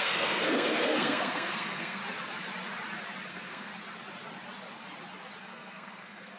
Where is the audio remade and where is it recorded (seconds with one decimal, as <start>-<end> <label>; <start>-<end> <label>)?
0.0-2.0 remade; 2.0-3.3 recorded; 3.3-3.7 remade; 3.7-5.4 recorded; 5.4-6.4 remade